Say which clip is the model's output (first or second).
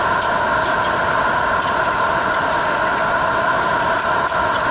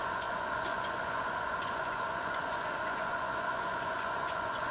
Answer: second